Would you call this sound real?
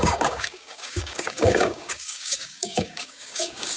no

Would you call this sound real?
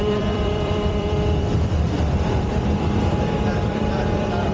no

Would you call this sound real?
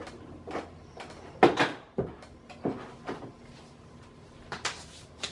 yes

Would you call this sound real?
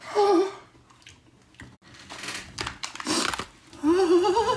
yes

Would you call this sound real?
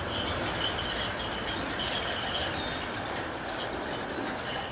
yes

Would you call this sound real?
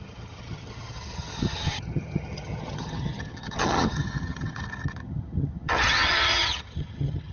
no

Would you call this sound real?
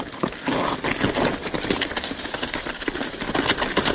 yes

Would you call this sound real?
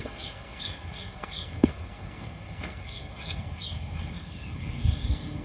no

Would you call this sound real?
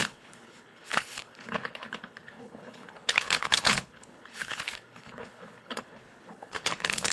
no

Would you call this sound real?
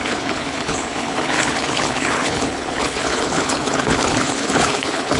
no